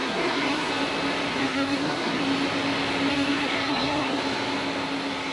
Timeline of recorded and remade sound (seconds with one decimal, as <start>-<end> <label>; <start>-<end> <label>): 0.0-0.7 remade; 0.7-1.3 recorded; 1.3-2.2 remade; 2.2-3.1 recorded; 3.1-4.2 remade; 4.2-5.3 recorded